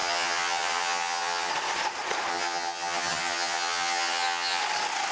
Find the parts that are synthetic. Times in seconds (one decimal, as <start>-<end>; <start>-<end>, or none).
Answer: 0.0-1.5; 2.3-4.6